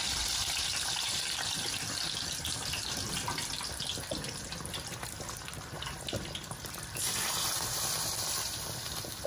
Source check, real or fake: fake